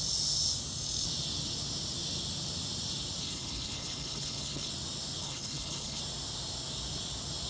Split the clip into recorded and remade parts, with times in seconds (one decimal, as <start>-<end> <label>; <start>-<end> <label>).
0.0-3.2 recorded; 3.2-4.7 remade; 4.7-5.2 recorded; 5.2-6.0 remade; 6.0-7.5 recorded